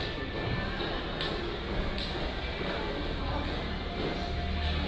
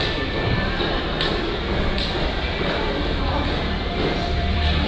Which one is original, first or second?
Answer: first